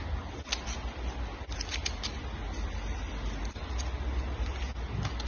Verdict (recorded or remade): recorded